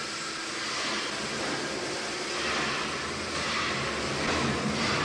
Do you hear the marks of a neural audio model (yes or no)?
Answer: no